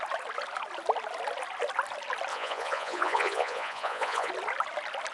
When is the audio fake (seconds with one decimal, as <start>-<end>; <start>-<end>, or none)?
2.3-4.3